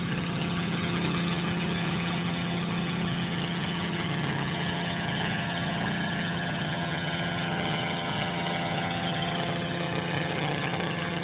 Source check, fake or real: fake